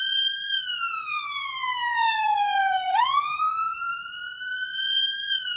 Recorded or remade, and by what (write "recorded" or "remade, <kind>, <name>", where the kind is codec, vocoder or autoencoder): remade, vocoder, Vocos